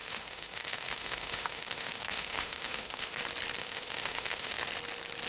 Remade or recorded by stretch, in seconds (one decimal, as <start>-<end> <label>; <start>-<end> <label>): 0.0-3.2 remade; 3.2-3.6 recorded; 3.6-4.7 remade; 4.7-5.3 recorded